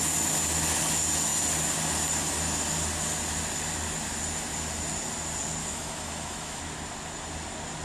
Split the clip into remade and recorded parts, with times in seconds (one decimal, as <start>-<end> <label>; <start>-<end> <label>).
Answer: 0.0-5.6 recorded; 5.6-6.6 remade; 6.6-7.8 recorded

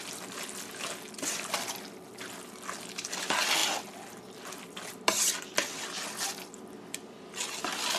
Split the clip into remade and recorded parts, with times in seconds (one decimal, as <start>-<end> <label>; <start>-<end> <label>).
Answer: 0.0-8.0 recorded

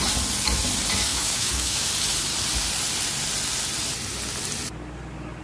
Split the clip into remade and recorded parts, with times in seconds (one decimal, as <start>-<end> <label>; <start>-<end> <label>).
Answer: 0.0-1.1 recorded; 1.1-1.9 remade; 1.9-5.4 recorded

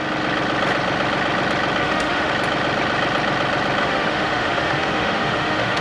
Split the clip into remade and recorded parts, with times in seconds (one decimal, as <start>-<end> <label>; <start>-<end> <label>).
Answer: 0.0-1.8 recorded; 1.8-2.3 remade; 2.3-3.8 recorded; 3.8-5.8 remade

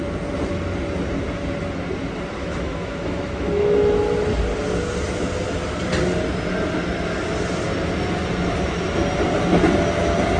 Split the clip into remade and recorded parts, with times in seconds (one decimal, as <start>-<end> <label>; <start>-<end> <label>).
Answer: 0.0-2.4 recorded; 2.4-4.0 remade; 4.0-10.4 recorded

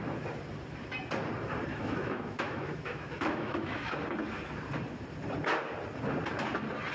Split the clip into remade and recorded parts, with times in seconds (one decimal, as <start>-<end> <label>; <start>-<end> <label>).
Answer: 0.0-1.7 recorded; 1.7-3.9 remade; 3.9-6.9 recorded

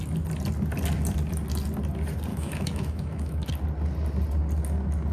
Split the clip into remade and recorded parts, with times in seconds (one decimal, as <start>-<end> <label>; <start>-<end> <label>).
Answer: 0.0-2.3 recorded; 2.3-3.5 remade; 3.5-5.1 recorded